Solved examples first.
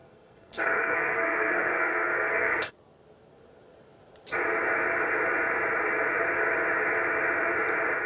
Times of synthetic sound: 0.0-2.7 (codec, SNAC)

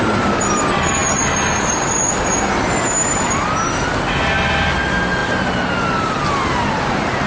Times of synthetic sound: none

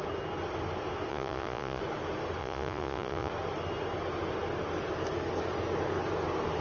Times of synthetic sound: 1.1-1.8 (vocoder, Vocos); 2.4-3.3

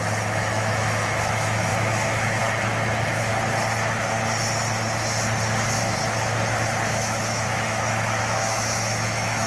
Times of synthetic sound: 0.0-3.3 (autoencoder, DAC-VAE); 6.9-9.5

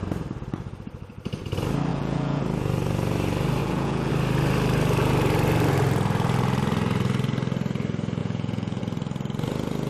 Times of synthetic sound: 1.9-2.4 (vocoder, Vocos); 3.6-4.1; 8.2-8.8